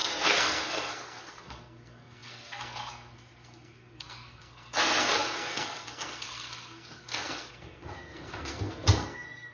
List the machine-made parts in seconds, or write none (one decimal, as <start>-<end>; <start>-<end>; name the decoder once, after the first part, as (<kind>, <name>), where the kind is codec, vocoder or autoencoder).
0.0-9.5 (codec, SNAC)